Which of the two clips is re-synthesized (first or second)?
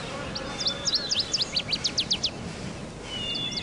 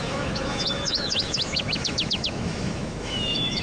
second